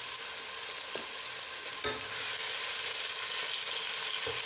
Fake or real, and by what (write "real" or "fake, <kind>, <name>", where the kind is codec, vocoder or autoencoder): real